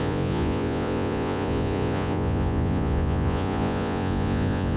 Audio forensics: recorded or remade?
remade